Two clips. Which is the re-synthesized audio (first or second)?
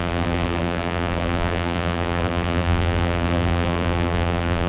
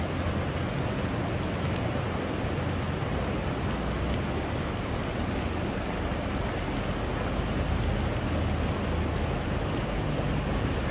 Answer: first